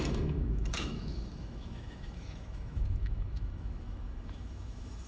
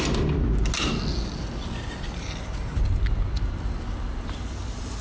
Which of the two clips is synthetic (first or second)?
first